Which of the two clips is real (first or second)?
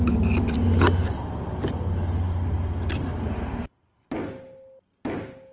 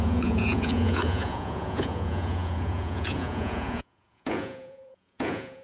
first